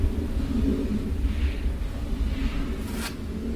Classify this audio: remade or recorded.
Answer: recorded